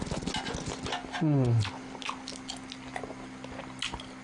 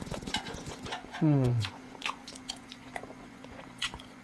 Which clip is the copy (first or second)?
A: second